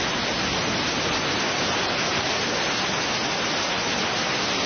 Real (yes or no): yes